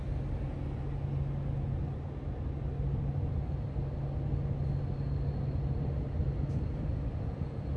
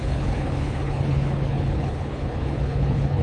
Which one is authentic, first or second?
first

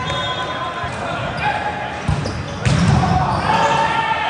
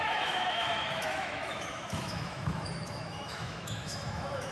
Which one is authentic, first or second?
first